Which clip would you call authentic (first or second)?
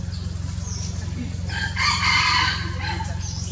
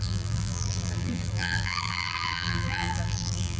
first